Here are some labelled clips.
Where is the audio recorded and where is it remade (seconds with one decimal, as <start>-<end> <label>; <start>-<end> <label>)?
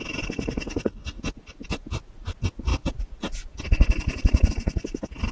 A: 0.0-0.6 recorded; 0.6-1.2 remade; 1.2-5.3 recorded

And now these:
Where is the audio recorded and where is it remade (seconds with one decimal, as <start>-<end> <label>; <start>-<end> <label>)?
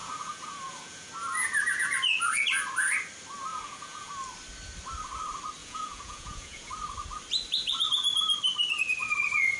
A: 0.0-1.1 remade; 1.1-3.5 recorded; 3.5-4.1 remade; 4.1-5.6 recorded; 5.6-6.7 remade; 6.7-9.6 recorded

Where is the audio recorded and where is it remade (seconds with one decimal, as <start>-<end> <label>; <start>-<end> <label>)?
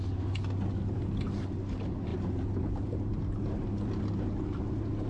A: 0.0-5.1 recorded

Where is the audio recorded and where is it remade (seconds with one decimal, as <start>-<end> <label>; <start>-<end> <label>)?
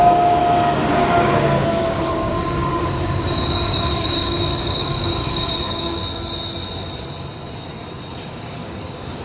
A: 0.0-0.4 remade; 0.4-0.9 recorded; 0.9-6.0 remade; 6.0-8.3 recorded; 8.3-9.2 remade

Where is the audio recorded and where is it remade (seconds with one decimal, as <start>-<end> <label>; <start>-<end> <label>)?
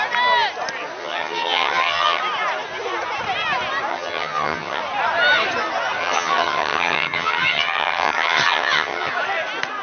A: 0.0-1.0 recorded; 1.0-2.2 remade; 2.2-3.9 recorded; 3.9-4.8 remade; 4.8-6.0 recorded; 6.0-9.1 remade; 9.1-9.8 recorded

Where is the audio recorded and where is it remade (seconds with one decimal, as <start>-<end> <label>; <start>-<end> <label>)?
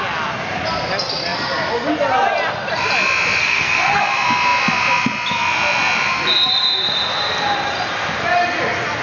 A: 0.0-3.4 recorded; 3.4-4.0 remade; 4.0-9.0 recorded